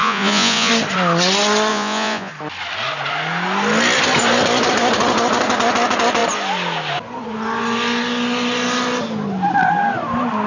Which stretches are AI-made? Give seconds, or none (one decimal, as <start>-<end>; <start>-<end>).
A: 0.0-0.7; 1.7-2.3